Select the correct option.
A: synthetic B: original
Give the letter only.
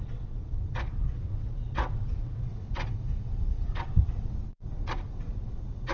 A